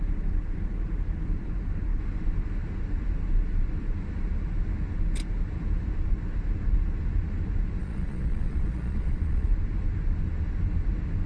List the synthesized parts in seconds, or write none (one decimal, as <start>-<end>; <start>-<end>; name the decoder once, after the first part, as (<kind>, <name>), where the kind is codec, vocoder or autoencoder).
7.8-9.5 (vocoder, Vocos)